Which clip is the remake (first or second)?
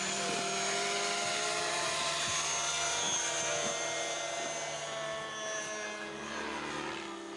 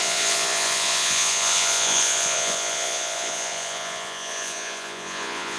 second